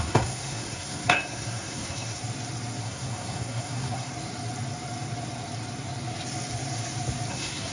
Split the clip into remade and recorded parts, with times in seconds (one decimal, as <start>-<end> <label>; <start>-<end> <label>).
0.0-2.2 remade; 2.2-2.8 recorded; 2.8-4.1 remade; 4.1-7.3 recorded; 7.3-7.7 remade

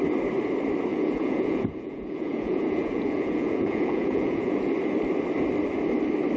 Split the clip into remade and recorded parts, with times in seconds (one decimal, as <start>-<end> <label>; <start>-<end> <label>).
0.0-0.9 recorded; 0.9-4.7 remade; 4.7-6.4 recorded

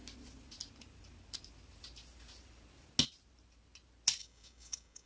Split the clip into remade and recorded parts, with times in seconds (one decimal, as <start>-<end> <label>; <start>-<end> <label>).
0.0-4.2 recorded; 4.2-5.1 remade

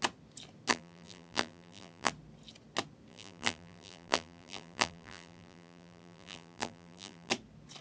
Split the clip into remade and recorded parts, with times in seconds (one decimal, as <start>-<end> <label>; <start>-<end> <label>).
0.0-0.7 recorded; 0.7-2.1 remade; 2.1-3.1 recorded; 3.1-7.3 remade; 7.3-7.8 recorded

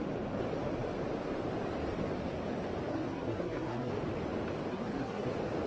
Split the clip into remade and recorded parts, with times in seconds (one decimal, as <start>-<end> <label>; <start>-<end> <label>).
0.0-2.9 recorded; 2.9-3.9 remade; 3.9-4.7 recorded; 4.7-5.3 remade; 5.3-5.7 recorded

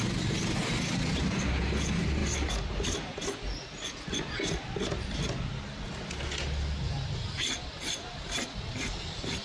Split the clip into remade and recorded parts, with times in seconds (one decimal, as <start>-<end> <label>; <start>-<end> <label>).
0.0-9.4 recorded

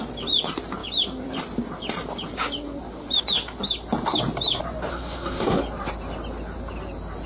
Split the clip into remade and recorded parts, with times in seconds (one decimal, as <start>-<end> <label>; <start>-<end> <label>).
0.0-4.9 recorded; 4.9-5.6 remade; 5.6-7.3 recorded